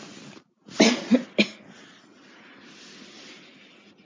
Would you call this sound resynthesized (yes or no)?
no